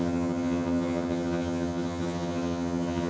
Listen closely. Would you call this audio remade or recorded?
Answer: remade